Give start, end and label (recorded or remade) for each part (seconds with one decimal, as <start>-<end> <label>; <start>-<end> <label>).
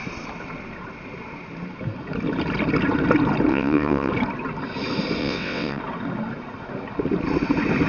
0.0-3.5 recorded; 3.5-4.1 remade; 4.1-5.2 recorded; 5.2-5.8 remade; 5.8-7.9 recorded